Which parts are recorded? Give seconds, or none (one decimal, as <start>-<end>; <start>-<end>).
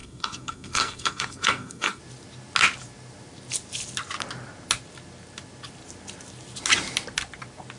2.0-7.8